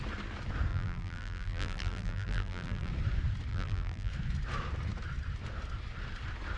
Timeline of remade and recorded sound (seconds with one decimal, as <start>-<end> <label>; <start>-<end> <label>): 0.0-0.7 recorded; 0.7-2.9 remade; 2.9-3.5 recorded; 3.5-4.1 remade; 4.1-6.6 recorded